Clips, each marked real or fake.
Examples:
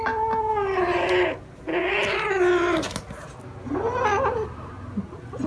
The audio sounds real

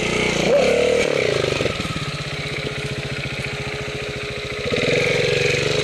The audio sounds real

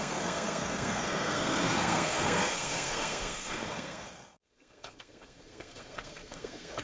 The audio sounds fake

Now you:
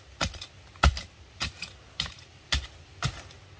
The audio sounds real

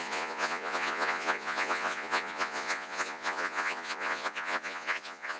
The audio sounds fake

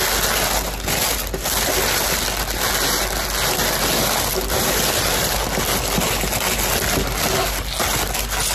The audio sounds real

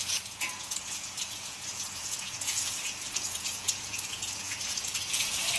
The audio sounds fake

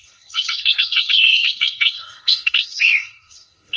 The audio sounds fake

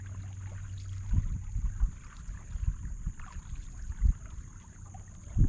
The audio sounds real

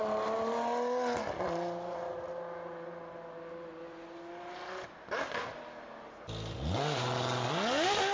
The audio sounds real